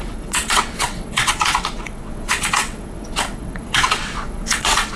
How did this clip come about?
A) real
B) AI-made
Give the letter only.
B